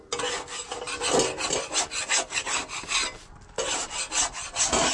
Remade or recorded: recorded